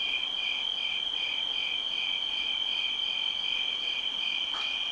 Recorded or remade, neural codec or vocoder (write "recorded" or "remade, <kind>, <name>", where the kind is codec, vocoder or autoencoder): recorded